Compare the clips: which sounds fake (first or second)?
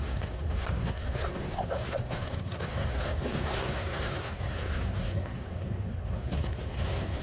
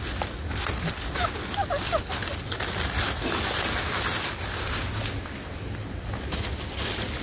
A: first